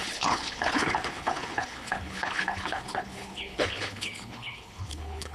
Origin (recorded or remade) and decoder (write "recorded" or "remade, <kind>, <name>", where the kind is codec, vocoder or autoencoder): remade, codec, HILCodec